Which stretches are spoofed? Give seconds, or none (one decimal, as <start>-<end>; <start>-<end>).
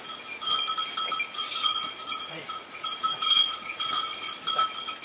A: 1.4-3.9